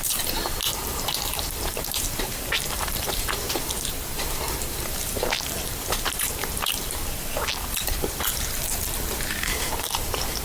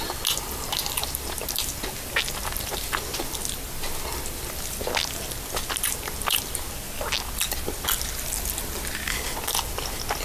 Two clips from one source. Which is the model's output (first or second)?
first